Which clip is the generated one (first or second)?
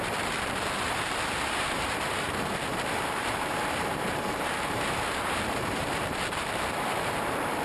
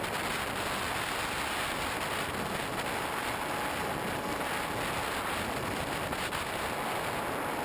first